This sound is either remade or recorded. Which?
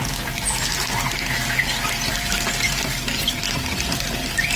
remade